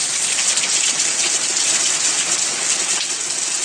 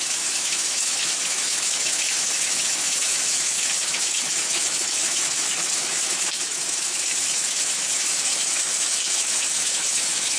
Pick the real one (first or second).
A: first